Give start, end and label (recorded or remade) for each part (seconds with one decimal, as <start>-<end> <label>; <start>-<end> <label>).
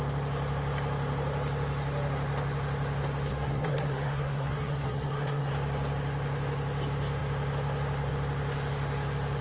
0.0-3.3 recorded; 3.3-5.5 remade; 5.5-9.4 recorded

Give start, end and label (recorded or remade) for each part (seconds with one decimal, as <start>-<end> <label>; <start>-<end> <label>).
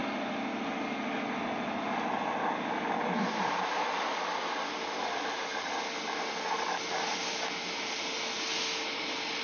0.0-5.0 recorded; 5.0-5.5 remade; 5.5-9.4 recorded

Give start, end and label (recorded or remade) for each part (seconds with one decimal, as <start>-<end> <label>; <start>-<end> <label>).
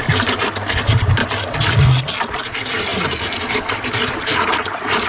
0.0-1.2 remade; 1.2-2.2 recorded; 2.2-5.1 remade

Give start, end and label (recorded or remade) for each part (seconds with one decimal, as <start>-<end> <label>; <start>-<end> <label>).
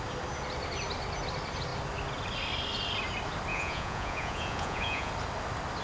0.0-3.5 recorded; 3.5-5.1 remade; 5.1-5.8 recorded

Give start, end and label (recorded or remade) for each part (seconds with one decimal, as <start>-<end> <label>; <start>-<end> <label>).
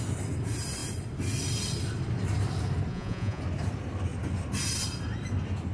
0.0-2.9 recorded; 2.9-3.4 remade; 3.4-5.7 recorded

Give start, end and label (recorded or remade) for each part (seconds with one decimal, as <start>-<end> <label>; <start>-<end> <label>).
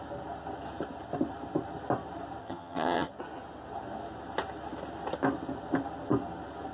0.0-2.4 recorded; 2.4-3.1 remade; 3.1-6.7 recorded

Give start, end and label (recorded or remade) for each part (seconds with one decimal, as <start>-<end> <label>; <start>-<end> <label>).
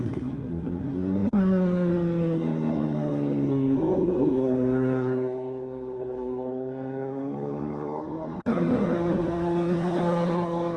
0.0-10.8 remade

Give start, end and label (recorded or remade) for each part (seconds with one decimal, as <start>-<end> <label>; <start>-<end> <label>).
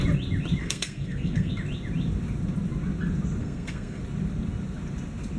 0.0-0.6 recorded; 0.6-1.5 remade; 1.5-3.4 recorded; 3.4-4.0 remade; 4.0-5.4 recorded